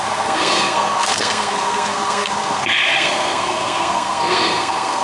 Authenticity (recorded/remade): remade